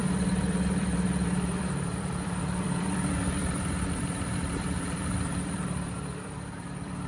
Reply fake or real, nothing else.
fake